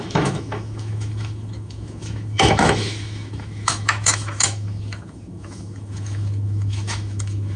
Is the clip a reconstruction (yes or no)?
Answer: yes